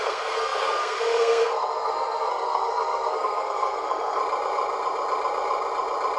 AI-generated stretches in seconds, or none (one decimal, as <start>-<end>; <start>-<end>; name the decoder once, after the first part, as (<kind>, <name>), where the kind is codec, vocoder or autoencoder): 0.0-4.2 (codec, SNAC)